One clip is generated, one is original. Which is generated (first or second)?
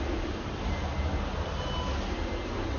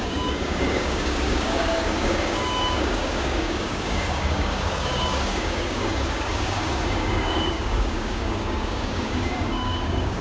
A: second